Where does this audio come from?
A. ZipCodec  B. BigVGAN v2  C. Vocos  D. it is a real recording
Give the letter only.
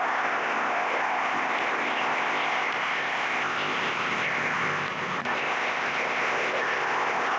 A